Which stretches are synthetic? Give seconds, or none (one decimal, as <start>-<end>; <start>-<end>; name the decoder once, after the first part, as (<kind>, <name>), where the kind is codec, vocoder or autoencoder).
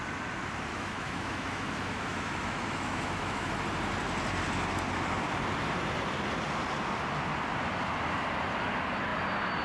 0.7-3.5 (autoencoder, DAC-VAE)